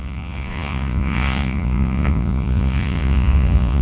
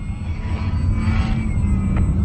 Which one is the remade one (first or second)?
first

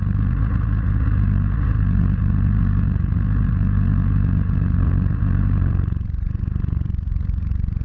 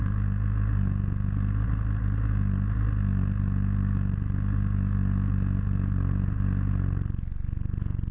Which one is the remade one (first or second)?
first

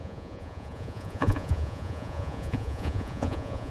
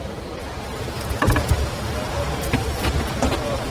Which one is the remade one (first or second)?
first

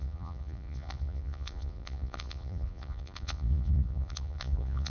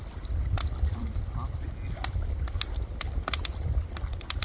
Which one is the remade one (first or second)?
first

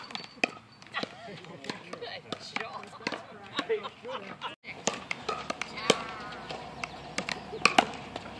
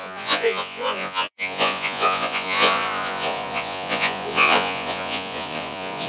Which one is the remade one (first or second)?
second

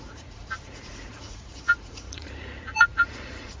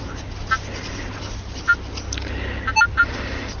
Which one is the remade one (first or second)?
first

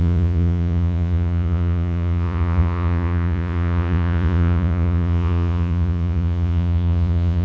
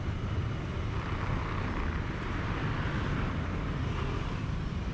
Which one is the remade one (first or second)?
first